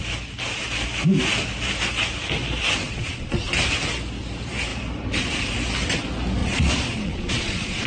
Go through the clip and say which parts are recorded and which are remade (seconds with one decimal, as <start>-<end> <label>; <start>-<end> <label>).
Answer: 0.0-2.8 recorded; 2.8-3.5 remade; 3.5-6.4 recorded; 6.4-7.9 remade